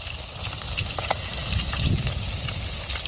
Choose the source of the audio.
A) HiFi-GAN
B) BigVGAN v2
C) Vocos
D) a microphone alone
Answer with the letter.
B